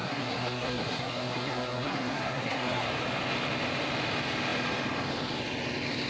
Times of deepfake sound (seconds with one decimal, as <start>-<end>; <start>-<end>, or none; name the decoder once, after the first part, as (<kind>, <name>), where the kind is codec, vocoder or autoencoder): 0.0-2.9 (codec, SNAC)